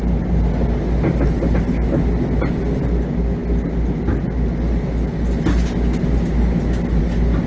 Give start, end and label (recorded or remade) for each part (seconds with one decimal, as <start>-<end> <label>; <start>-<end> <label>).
0.0-7.5 recorded